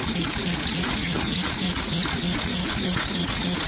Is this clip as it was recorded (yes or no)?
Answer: no